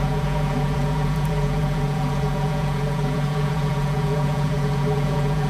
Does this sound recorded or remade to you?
remade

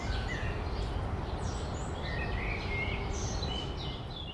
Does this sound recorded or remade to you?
recorded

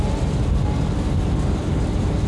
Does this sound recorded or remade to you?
recorded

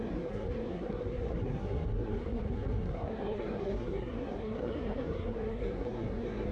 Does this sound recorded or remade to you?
remade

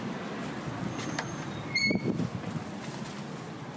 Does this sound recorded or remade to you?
recorded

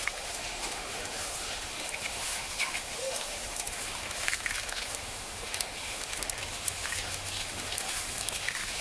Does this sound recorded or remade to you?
remade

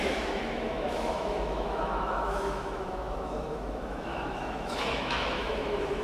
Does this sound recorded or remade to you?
remade